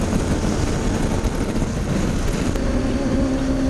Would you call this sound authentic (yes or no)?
yes